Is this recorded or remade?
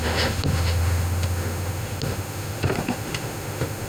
remade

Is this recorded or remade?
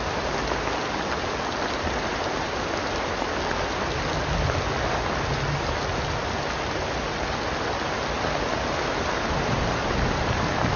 recorded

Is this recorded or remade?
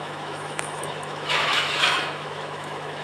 remade